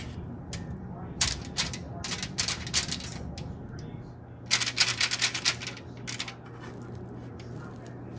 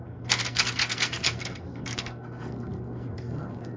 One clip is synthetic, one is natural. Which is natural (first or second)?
first